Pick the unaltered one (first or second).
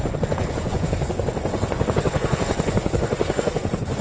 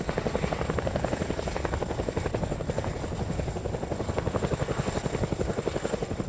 second